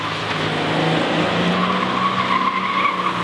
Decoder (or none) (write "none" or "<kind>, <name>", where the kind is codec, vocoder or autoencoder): none